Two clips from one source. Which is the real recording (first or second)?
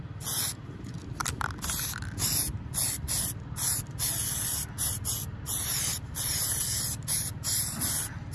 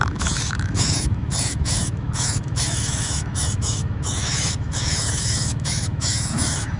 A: first